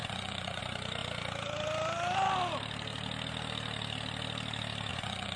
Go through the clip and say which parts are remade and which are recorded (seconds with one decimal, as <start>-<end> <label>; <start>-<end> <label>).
0.0-0.6 remade; 0.6-4.9 recorded; 4.9-5.4 remade